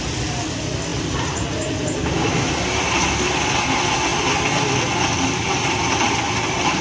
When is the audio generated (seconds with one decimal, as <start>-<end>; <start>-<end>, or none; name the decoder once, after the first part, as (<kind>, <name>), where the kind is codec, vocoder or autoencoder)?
none